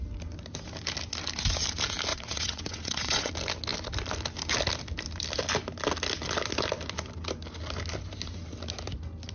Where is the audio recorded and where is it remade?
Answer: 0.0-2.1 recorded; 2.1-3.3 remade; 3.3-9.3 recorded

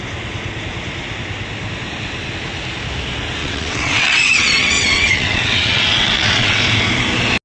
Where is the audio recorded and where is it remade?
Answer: 0.0-3.4 recorded; 3.4-6.6 remade; 6.6-7.4 recorded

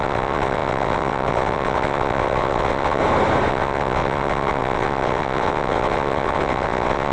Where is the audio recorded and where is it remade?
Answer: 0.0-3.0 remade; 3.0-3.5 recorded; 3.5-7.1 remade

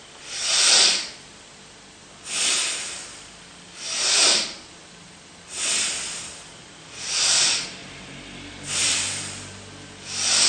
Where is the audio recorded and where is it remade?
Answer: 0.0-10.5 recorded